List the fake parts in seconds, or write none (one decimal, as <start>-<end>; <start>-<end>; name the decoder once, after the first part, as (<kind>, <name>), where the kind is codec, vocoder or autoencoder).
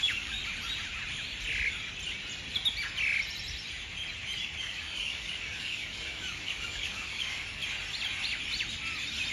0.0-0.4 (codec, DAC); 4.6-7.6